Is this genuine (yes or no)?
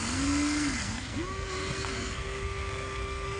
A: no